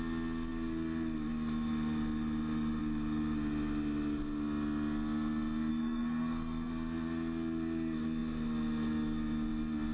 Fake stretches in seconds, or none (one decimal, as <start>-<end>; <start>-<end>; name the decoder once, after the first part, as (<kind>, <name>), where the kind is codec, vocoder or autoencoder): 5.7-6.7 (codec, SNAC)